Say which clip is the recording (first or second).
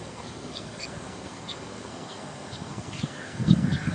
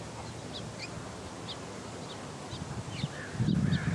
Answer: second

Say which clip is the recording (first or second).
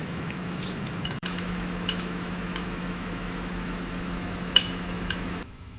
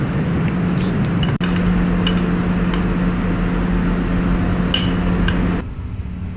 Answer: second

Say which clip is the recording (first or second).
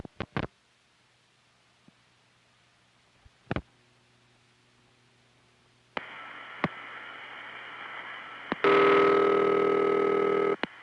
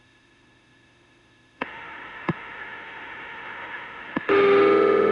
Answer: first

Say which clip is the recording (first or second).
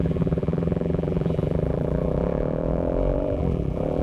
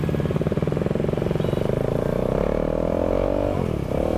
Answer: second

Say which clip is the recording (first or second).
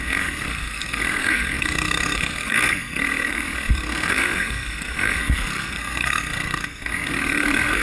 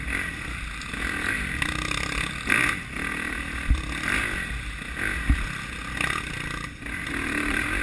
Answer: second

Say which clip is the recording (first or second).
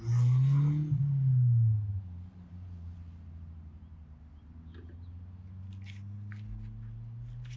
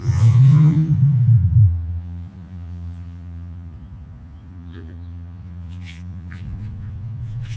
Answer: first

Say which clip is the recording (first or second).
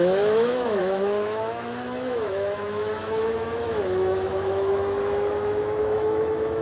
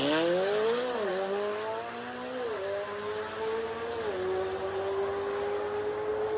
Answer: second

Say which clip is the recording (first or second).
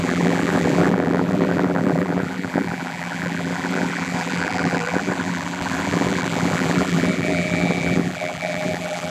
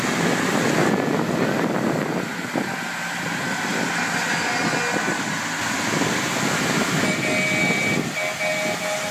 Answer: second